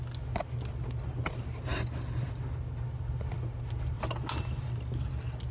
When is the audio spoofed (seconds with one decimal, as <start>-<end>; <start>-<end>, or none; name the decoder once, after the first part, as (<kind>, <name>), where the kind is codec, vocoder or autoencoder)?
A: none